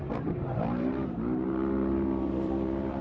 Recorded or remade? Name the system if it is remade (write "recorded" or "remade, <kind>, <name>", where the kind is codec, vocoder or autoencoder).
remade, vocoder, BigVGAN v2